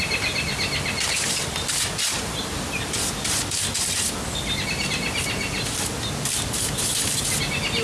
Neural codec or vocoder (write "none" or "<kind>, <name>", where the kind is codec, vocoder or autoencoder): none